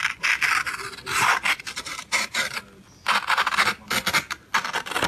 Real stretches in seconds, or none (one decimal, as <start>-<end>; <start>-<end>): 0.0-1.9; 2.6-5.1